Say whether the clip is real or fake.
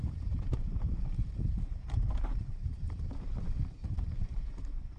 fake